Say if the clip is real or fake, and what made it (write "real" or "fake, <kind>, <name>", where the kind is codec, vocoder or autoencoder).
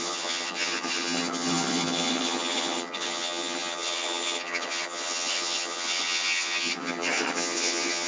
fake, vocoder, HiFi-GAN